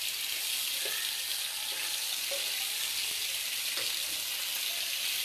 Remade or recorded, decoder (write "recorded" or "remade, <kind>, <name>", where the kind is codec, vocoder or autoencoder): recorded